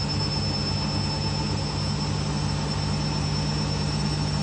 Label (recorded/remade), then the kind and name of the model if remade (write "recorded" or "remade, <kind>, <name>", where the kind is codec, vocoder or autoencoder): recorded